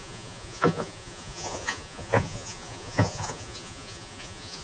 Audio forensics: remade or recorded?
remade